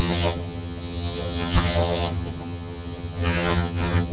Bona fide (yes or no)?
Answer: no